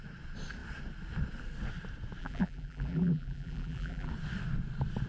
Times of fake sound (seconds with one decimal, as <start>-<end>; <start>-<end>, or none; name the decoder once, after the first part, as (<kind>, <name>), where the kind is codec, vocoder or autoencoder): 2.2-4.1 (vocoder, BigVGAN v2)